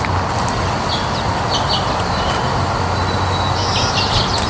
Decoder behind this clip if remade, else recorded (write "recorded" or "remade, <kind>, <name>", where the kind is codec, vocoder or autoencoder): recorded